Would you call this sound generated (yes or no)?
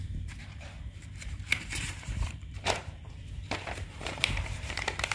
yes